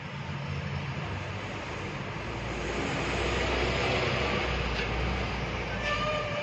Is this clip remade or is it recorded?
recorded